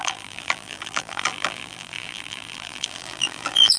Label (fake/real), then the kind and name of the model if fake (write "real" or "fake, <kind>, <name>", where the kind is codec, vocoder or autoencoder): fake, vocoder, BigVGAN v2